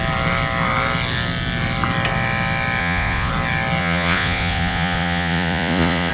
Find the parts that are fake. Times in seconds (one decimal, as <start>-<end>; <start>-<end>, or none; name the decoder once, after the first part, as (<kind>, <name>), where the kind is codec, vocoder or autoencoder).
2.8-3.3 (vocoder, Vocos); 3.8-6.1